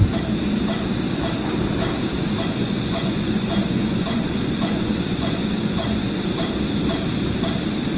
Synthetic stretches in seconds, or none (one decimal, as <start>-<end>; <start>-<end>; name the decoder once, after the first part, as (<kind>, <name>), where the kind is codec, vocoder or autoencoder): 2.6-6.2 (vocoder, Vocos)